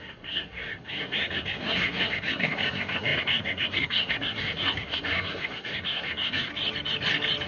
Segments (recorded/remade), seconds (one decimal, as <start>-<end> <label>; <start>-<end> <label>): 0.0-6.5 remade; 6.5-7.5 recorded